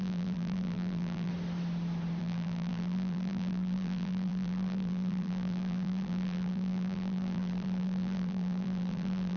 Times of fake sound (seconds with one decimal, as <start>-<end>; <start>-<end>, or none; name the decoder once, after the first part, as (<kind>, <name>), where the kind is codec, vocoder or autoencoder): 0.0-1.3 (vocoder, BigVGAN v2); 2.2-9.4